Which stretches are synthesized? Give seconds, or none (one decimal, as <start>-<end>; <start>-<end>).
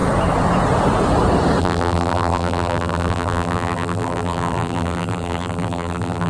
1.6-6.3